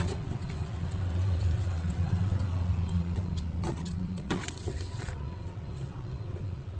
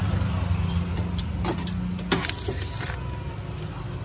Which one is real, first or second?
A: second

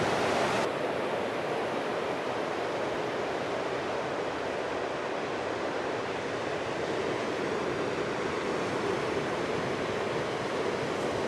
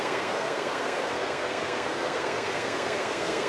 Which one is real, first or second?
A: first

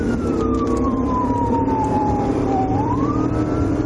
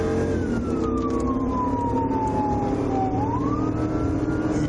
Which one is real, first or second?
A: second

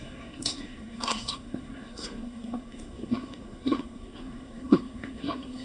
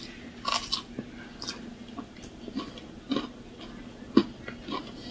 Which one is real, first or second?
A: second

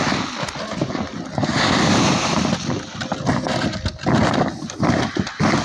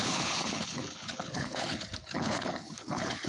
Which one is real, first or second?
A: first